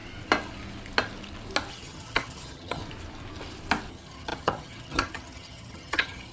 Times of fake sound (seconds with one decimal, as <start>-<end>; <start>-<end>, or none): 1.7-2.8; 3.9-6.3

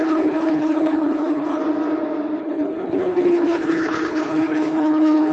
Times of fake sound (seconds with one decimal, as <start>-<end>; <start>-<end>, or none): 0.0-1.6; 2.4-5.3

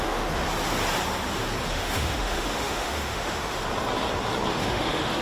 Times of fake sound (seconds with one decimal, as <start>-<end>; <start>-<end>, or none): 0.0-0.4; 1.7-3.6; 4.5-5.2

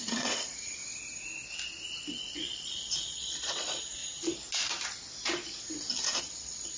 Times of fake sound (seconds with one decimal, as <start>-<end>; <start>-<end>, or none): 0.0-0.8; 2.2-4.0; 6.2-6.8

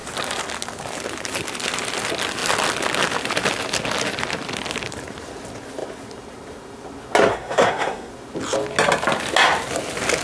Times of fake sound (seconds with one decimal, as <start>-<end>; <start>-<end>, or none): 7.3-8.1

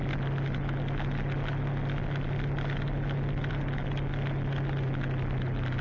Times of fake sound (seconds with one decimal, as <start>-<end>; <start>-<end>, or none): none

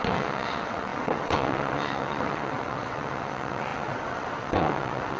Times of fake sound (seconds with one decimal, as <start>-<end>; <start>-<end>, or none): 0.0-5.2